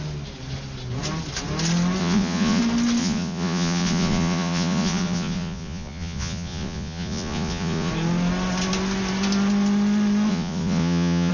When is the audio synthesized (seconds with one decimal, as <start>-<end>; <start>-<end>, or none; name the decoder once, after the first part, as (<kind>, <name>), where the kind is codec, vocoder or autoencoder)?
2.0-2.6 (vocoder, Vocos); 3.0-7.9; 10.3-11.3

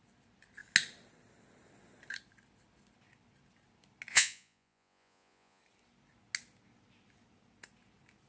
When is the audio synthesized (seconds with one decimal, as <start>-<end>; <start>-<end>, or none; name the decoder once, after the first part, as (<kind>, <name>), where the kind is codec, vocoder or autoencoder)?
4.1-5.6 (vocoder, Vocos)

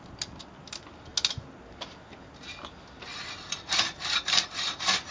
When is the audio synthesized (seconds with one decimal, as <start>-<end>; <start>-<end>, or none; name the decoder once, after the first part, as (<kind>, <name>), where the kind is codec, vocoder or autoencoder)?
none

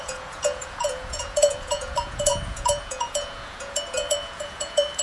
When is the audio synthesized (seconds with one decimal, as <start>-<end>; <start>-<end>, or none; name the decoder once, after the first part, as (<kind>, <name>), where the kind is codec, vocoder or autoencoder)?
0.0-5.0 (vocoder, Vocos)

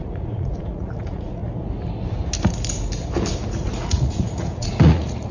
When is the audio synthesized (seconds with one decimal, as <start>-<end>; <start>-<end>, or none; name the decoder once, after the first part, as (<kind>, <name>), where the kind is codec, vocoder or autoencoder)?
0.0-1.4 (vocoder, Vocos); 3.5-5.3